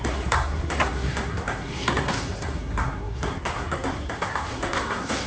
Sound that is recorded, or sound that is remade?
remade